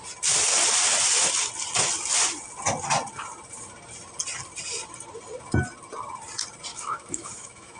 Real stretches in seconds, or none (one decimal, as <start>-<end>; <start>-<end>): 0.0-6.7